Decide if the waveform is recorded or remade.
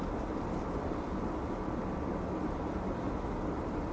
recorded